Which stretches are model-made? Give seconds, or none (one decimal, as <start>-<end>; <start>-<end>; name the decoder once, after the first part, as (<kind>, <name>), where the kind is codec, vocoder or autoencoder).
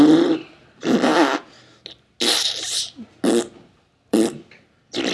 0.0-1.1 (vocoder, BigVGAN v2); 3.7-5.1